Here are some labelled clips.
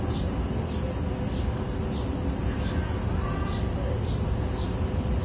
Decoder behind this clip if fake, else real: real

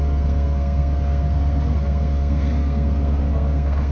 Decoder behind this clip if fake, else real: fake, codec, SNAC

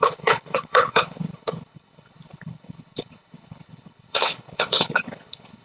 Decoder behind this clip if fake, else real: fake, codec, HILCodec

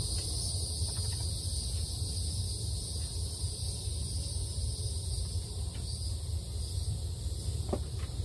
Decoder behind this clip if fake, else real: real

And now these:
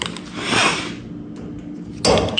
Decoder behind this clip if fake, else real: real